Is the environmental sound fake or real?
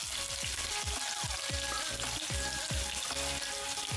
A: real